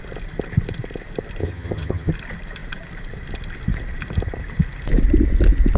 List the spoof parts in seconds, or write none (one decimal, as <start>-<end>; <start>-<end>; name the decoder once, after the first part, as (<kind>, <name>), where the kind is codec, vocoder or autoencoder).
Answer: 1.4-2.1 (vocoder, HiFi-GAN)